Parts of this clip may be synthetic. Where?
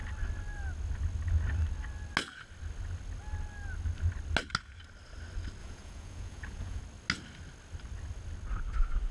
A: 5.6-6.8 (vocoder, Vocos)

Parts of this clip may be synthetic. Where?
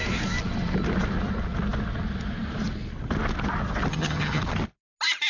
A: 3.9-4.4 (vocoder, HiFi-GAN)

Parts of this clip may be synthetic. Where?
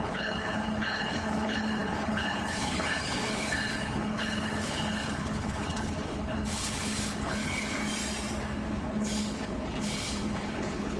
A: 0.0-7.8 (codec, HILCodec); 8.7-11.0